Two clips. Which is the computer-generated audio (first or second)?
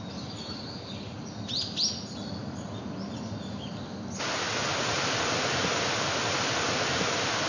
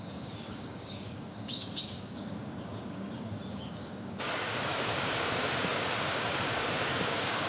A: second